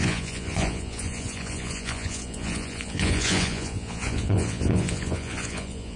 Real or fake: fake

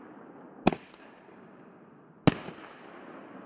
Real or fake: real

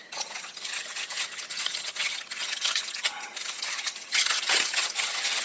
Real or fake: fake